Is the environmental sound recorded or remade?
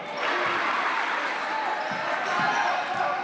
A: recorded